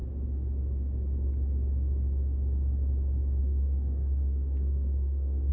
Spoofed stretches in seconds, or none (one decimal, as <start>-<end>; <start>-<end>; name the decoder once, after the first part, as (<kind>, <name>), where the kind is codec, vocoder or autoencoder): 3.4-5.5 (codec, SNAC)